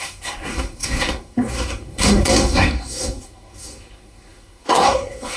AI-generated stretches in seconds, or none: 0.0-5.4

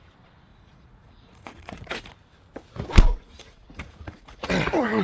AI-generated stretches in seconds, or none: 0.5-2.1; 3.1-4.5

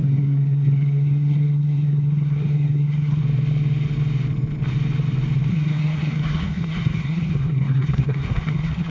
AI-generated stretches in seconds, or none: 0.0-3.2; 5.5-8.9

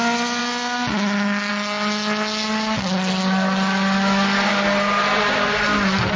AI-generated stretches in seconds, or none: none